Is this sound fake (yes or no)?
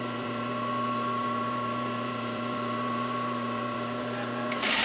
yes